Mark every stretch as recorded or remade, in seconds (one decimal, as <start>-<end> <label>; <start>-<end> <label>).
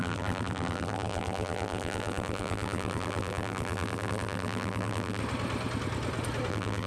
0.0-5.2 remade; 5.2-6.5 recorded; 6.5-6.9 remade